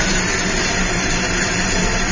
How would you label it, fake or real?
real